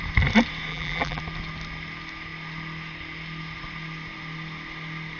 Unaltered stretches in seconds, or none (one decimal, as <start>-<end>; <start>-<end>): 0.0-0.7; 1.2-5.2